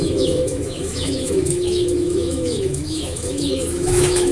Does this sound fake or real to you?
fake